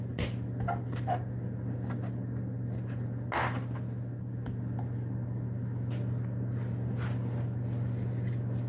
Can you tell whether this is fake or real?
real